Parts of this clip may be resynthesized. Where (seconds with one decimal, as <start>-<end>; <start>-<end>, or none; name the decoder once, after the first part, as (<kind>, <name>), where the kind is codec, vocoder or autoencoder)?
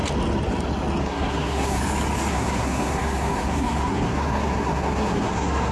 1.0-1.8 (codec, SNAC); 2.3-5.7